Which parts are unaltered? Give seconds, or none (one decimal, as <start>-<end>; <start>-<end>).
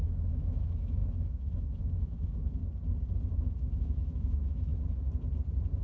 2.6-3.3; 4.7-5.8